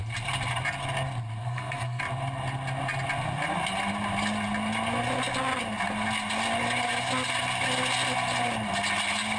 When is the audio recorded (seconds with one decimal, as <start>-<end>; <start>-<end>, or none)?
0.0-1.4; 2.0-9.4